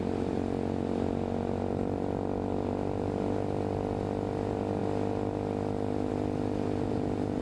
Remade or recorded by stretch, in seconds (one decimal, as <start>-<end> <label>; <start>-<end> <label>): 0.0-7.4 recorded